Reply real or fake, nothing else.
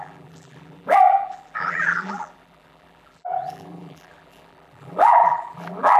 fake